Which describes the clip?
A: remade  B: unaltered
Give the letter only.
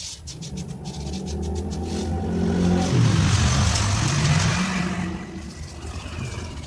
B